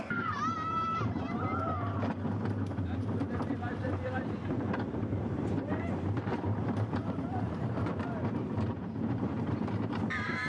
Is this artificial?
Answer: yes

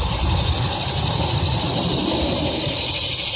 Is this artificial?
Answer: yes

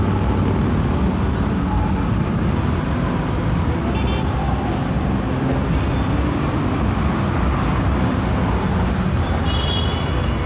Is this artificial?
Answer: no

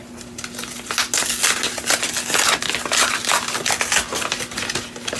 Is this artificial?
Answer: no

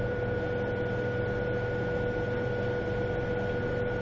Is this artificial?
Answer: no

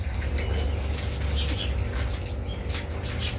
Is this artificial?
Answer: no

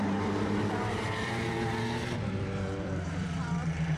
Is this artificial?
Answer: yes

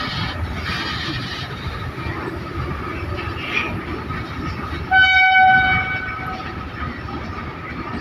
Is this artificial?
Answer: no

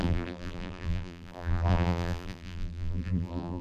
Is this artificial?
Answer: yes